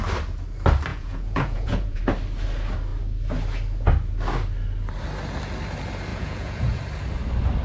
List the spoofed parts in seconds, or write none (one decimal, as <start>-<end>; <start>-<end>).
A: 0.9-2.0; 6.1-6.8